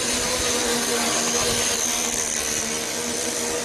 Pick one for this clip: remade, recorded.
recorded